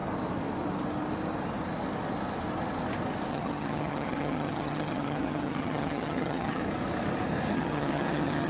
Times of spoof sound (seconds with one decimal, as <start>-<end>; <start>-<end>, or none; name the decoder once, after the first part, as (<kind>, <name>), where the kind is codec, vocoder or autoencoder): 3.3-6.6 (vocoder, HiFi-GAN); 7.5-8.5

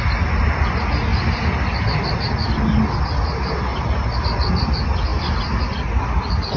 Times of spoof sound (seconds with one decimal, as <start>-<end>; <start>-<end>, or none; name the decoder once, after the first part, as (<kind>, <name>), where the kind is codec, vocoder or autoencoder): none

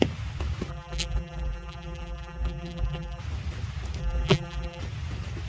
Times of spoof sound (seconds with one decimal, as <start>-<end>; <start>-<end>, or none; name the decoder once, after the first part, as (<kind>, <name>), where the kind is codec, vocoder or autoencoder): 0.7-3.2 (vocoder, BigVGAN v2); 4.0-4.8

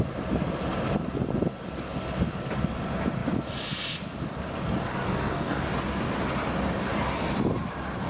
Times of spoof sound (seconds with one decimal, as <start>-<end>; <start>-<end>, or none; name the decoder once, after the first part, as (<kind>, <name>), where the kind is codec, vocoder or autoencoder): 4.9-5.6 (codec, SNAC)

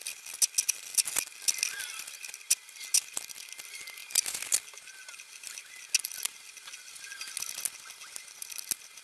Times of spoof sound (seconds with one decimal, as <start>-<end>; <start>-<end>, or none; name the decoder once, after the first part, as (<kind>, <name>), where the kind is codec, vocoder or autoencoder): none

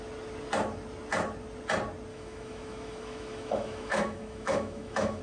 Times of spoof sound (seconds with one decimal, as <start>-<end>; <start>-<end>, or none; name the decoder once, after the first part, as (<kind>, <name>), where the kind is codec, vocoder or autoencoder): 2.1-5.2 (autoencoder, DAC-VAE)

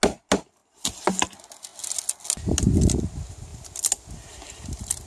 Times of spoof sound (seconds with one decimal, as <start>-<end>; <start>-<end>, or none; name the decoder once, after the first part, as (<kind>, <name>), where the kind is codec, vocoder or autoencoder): none

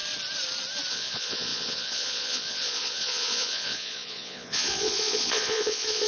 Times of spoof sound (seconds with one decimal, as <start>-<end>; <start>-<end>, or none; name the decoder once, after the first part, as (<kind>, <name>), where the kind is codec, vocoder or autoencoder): 0.9-6.1 (vocoder, Vocos)